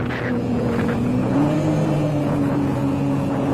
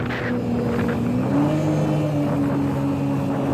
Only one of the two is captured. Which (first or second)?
second